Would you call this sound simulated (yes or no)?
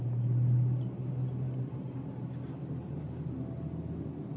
no